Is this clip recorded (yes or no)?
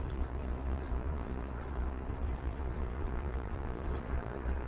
no